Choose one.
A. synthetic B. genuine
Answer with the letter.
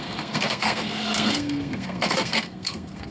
A